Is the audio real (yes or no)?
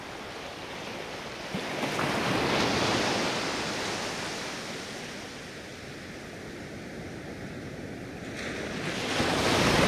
yes